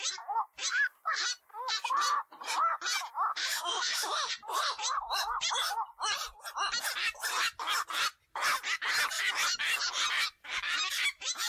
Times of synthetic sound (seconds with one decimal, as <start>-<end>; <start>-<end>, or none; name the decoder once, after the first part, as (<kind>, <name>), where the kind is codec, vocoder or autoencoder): 3.3-4.3 (autoencoder, DAC-VAE)